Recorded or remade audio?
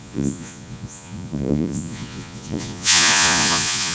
remade